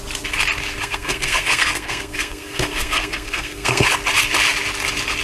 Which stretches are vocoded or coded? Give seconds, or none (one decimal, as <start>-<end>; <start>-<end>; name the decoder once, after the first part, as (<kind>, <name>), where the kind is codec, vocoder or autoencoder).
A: 0.8-3.9 (codec, SNAC)